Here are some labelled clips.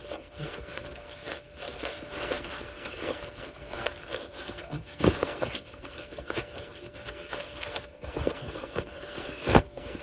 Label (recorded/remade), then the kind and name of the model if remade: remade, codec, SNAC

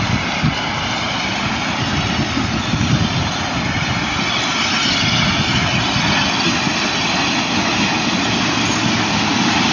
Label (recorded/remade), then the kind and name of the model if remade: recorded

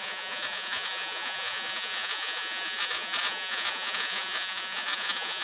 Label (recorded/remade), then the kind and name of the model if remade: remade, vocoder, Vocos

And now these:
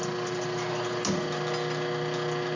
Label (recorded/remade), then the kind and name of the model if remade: recorded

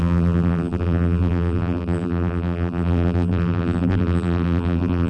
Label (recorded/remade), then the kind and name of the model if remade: remade, vocoder, BigVGAN v2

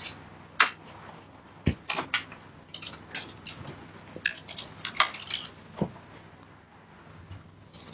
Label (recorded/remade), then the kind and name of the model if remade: recorded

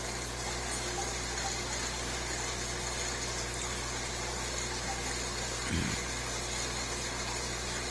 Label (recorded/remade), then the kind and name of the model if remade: recorded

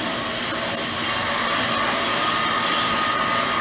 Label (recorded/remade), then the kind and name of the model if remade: recorded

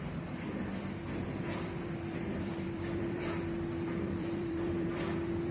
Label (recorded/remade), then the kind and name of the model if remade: remade, vocoder, BigVGAN v2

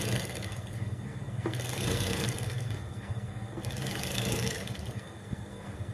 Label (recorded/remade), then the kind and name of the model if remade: remade, codec, SNAC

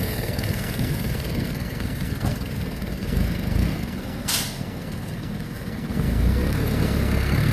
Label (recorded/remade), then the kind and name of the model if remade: remade, codec, SNAC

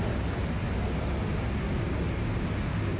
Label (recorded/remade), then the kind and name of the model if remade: recorded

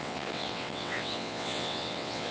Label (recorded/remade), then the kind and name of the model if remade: remade, vocoder, WaveNeXt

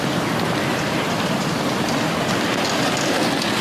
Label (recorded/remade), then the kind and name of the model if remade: recorded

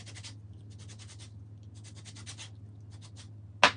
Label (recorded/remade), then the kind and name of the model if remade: recorded